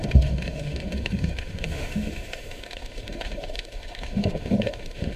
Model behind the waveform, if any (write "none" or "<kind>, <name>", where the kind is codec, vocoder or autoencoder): autoencoder, DAC-VAE